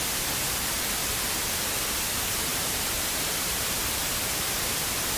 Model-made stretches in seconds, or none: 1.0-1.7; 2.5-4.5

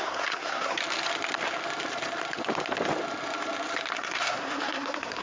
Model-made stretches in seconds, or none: 0.0-0.8; 3.9-5.2